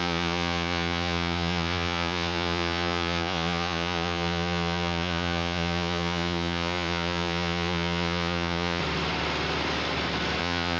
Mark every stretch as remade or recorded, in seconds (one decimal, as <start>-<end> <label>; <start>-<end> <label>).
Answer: 0.0-8.8 remade; 8.8-10.4 recorded; 10.4-10.8 remade